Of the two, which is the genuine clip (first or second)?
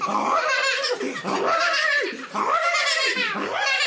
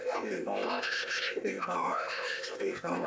first